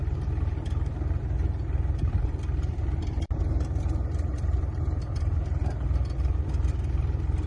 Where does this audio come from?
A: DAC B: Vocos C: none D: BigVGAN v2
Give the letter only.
C